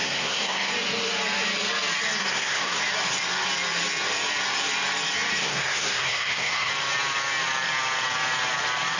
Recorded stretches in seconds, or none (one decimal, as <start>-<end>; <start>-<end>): 0.7-2.2; 2.8-5.4; 6.7-9.0